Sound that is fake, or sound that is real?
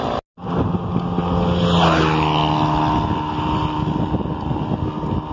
real